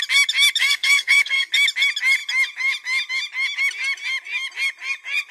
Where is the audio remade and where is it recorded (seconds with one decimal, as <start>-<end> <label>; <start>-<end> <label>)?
0.0-0.6 recorded; 0.6-1.5 remade; 1.5-5.3 recorded